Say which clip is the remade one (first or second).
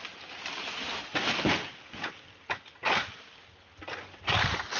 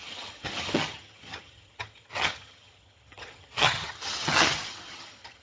second